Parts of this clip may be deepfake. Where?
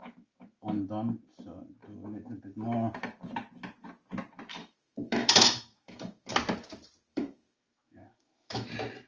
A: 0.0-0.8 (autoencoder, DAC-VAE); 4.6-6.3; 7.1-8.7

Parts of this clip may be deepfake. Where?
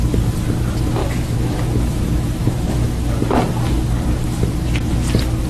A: 1.0-2.0 (autoencoder, DAC-VAE); 2.4-3.0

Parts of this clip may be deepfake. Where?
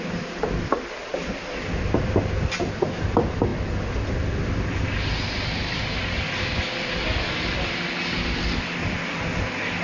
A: none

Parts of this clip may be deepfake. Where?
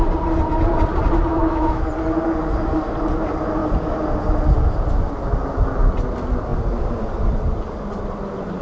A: 1.3-1.9 (autoencoder, DAC-VAE)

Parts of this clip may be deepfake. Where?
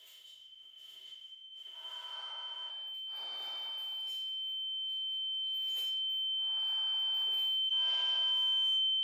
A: 0.0-2.7 (autoencoder, DAC-VAE); 7.7-9.0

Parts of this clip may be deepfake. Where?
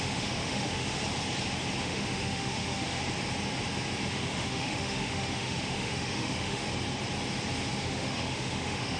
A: 0.0-1.0 (autoencoder, DAC-VAE); 1.8-3.0; 4.1-6.6; 7.8-9.0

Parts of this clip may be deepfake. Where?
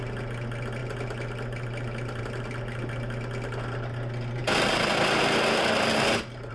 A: none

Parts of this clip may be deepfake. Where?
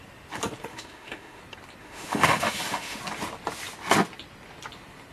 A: 0.7-1.4 (autoencoder, DAC-VAE); 1.8-3.0